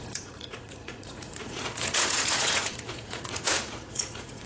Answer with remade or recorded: remade